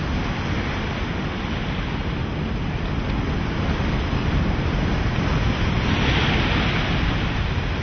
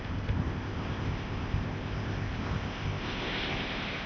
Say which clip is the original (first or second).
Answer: first